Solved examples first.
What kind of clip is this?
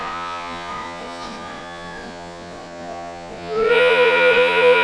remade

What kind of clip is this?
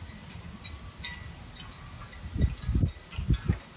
recorded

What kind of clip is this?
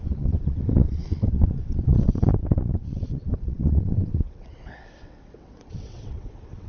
remade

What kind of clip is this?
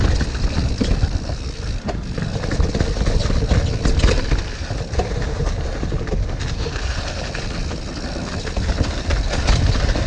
recorded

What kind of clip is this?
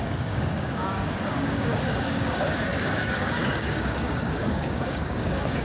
remade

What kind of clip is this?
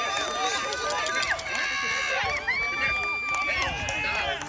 recorded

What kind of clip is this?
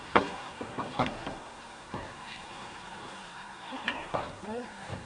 remade